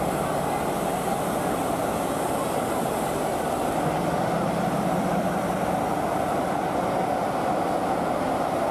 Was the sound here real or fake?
real